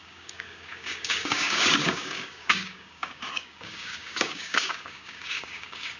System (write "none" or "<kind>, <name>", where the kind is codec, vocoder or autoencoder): codec, DAC